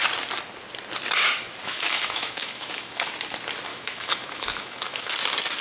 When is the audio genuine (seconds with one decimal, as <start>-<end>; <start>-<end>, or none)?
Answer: 0.0-1.6; 3.1-3.7; 5.1-5.6